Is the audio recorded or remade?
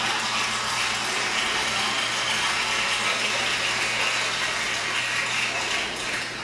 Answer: recorded